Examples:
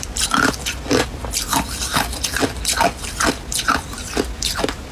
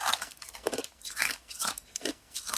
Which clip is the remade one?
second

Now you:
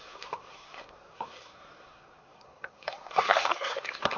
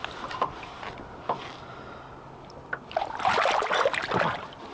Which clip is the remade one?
first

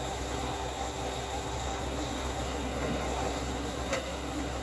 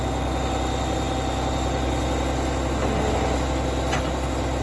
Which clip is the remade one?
first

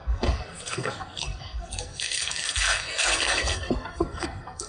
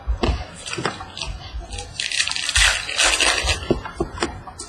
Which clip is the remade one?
first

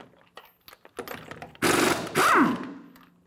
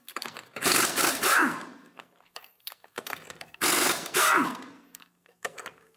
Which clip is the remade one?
second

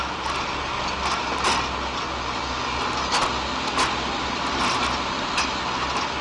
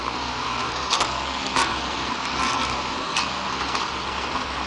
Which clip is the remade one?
second